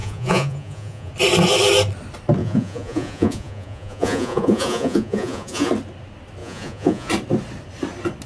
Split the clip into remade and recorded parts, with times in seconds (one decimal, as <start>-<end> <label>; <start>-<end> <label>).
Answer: 0.0-1.1 remade; 1.1-2.4 recorded; 2.4-5.7 remade; 5.7-6.4 recorded; 6.4-7.1 remade; 7.1-8.3 recorded